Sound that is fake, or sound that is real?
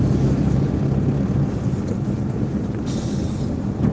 real